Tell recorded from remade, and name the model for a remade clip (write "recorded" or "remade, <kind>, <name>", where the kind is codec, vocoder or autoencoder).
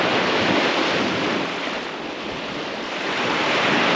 remade, vocoder, BigVGAN v2